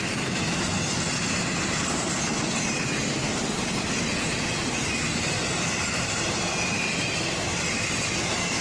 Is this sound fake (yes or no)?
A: no